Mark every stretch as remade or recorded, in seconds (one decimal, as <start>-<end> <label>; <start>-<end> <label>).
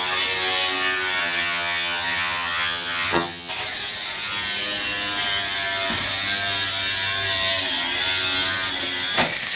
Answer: 0.0-1.2 recorded; 1.2-3.5 remade; 3.5-9.6 recorded